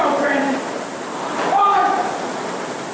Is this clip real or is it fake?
real